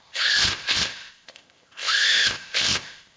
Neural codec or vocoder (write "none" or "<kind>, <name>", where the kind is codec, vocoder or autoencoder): codec, ZipCodec